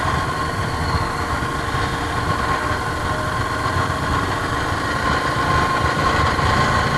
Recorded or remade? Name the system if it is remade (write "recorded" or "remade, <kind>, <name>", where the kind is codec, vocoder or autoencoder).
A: recorded